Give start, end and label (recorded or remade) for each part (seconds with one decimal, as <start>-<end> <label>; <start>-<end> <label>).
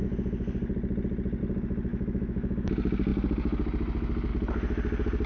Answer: 0.0-1.9 recorded; 1.9-2.7 remade; 2.7-5.3 recorded